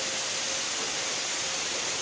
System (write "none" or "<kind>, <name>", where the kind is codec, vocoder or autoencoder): none